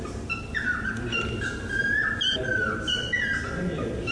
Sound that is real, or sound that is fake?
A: real